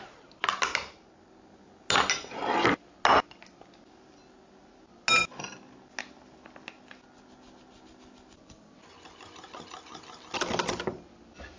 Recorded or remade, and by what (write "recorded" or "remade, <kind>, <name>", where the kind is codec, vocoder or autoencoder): recorded